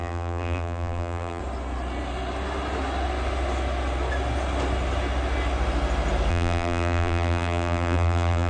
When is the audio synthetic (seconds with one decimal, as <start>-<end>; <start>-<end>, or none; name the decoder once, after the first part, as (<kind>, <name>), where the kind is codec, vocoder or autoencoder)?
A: 0.0-1.4 (vocoder, BigVGAN v2); 6.3-8.5